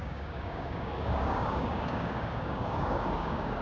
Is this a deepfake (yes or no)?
yes